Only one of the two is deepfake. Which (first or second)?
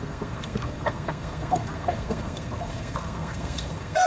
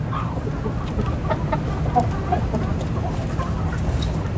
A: first